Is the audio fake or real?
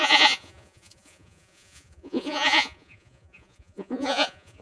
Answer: fake